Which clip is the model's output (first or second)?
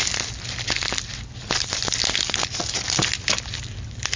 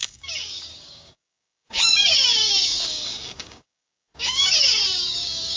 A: second